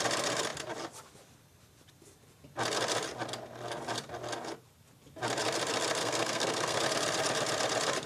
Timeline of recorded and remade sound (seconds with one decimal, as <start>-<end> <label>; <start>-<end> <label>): 0.0-6.0 recorded; 6.0-6.8 remade; 6.8-8.1 recorded